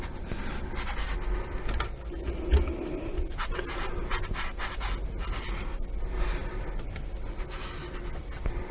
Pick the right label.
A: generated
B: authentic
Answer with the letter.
B